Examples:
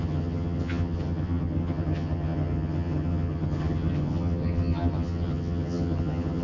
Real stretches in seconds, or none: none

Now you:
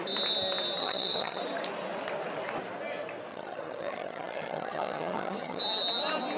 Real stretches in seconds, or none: 0.0-0.8; 1.4-3.3; 5.6-6.4

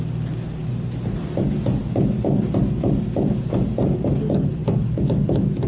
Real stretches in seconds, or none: 0.0-5.7

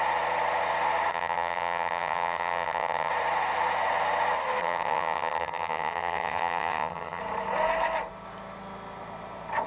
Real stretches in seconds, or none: 0.0-1.1; 3.1-4.6; 7.2-9.7